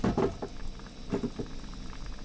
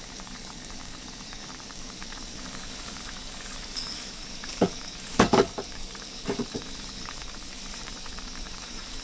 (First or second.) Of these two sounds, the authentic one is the first